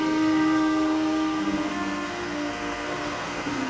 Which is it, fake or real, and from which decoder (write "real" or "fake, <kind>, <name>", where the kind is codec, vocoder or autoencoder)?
fake, codec, SNAC